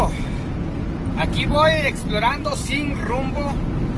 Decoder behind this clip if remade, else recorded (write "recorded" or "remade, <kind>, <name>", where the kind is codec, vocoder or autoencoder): recorded